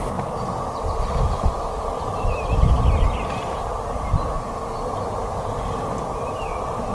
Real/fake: real